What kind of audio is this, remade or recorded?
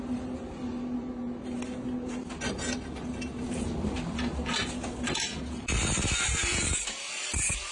recorded